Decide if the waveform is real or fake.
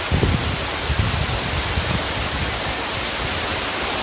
real